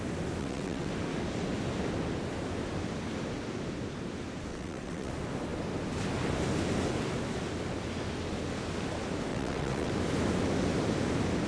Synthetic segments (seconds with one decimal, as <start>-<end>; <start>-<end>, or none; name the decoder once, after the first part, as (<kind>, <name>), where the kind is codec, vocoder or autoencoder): 0.4-0.9 (vocoder, WaveNeXt); 4.5-5.1; 9.3-9.9